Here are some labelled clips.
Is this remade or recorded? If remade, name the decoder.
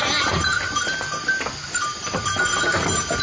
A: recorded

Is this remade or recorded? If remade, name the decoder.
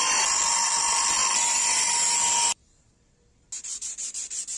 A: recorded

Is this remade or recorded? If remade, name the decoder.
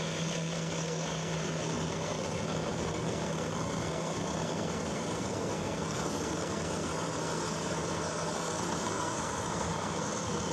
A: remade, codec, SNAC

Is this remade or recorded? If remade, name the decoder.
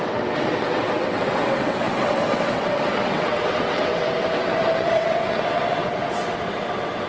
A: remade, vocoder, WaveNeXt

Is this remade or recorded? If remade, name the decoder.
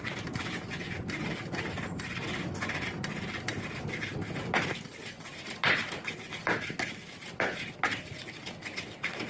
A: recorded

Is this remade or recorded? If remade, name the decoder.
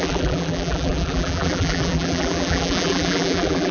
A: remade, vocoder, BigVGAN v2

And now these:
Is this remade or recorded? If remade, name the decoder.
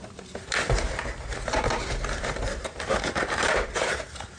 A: remade, vocoder, BigVGAN v2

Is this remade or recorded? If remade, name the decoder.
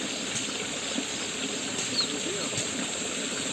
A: recorded